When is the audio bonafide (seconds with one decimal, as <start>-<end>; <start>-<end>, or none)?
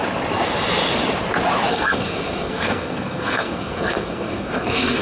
0.0-1.7